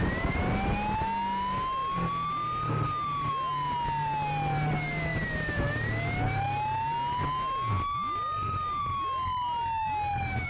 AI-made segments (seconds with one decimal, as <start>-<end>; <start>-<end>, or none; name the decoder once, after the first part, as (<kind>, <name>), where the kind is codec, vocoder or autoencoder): none